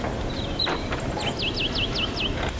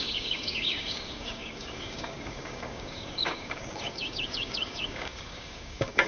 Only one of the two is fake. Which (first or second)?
second